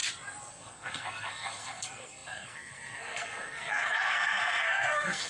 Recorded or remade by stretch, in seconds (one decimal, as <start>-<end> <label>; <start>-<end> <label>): 0.0-0.5 recorded; 0.5-5.3 remade